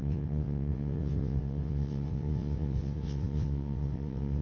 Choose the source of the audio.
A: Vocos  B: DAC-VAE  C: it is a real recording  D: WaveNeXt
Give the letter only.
D